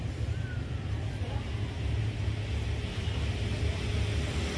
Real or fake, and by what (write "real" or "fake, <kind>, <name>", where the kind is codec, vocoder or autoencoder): real